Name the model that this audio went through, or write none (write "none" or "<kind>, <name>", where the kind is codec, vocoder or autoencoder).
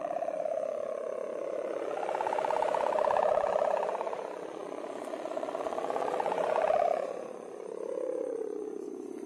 vocoder, Vocos